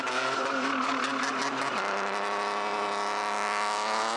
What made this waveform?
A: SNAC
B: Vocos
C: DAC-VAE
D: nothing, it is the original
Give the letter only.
D